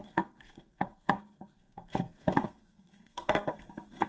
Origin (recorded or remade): remade